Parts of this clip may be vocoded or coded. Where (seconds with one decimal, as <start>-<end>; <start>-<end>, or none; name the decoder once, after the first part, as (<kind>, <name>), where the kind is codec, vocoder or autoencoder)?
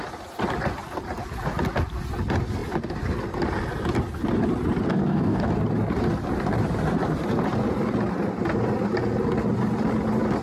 4.9-5.5 (codec, DAC)